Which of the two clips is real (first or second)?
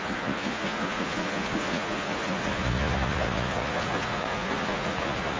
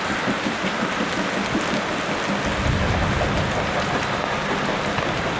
second